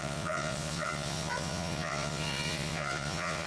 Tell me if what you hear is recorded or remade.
remade